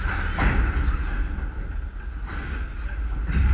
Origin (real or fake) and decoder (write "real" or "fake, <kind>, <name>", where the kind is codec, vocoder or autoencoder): real